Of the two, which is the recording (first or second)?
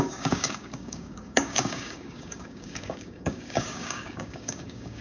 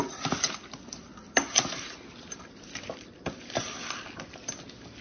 second